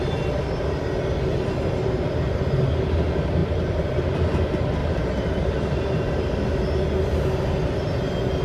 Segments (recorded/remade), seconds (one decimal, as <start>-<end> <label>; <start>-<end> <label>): 0.0-3.4 recorded; 3.4-4.0 remade; 4.0-4.8 recorded; 4.8-6.6 remade; 6.6-8.4 recorded